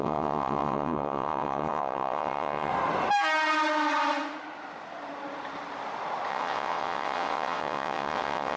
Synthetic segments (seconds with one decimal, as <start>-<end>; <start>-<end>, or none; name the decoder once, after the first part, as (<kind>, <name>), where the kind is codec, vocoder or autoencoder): 0.0-2.7 (vocoder, WaveNeXt); 6.3-8.6